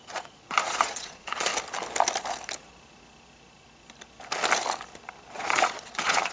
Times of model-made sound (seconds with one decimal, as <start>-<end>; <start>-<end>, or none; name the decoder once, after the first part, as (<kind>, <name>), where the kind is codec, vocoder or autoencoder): 0.0-1.5 (vocoder, Vocos); 5.3-6.3